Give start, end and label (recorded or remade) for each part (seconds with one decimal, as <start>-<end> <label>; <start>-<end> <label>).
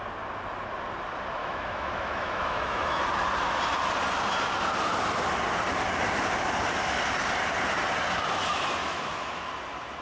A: 0.0-1.4 recorded; 1.4-3.0 remade; 3.0-8.8 recorded; 8.8-9.5 remade; 9.5-10.0 recorded